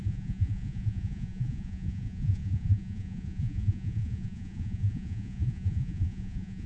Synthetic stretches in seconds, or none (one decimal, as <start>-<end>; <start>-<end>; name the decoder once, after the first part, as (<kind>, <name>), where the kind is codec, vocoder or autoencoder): 0.0-6.7 (vocoder, Vocos)